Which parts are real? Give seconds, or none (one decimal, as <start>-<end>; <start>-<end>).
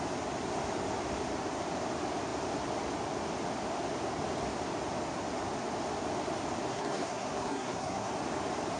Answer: 0.0-6.7; 8.1-8.8